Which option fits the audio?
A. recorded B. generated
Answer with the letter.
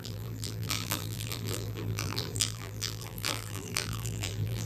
B